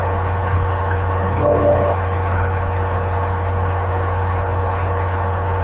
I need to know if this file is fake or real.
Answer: fake